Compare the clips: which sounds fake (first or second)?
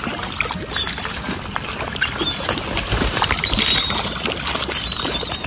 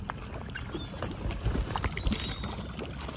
first